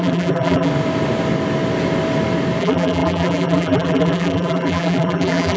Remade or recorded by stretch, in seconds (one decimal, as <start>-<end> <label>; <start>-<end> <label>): 0.0-0.7 remade; 0.7-2.6 recorded; 2.6-5.6 remade